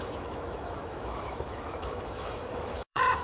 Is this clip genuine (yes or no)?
no